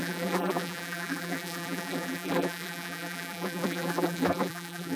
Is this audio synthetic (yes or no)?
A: yes